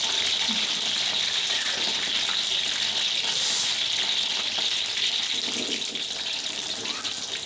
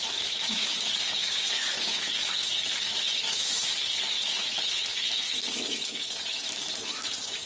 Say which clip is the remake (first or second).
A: second